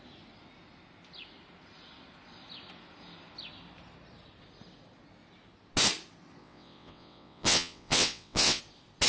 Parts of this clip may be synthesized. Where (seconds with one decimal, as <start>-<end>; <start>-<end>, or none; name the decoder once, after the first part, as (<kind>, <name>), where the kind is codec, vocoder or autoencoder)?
6.4-8.6 (vocoder, WaveNeXt)